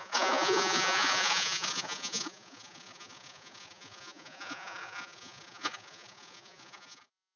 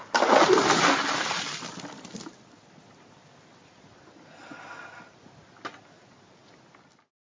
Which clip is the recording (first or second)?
second